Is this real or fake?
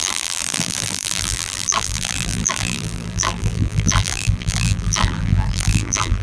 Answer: fake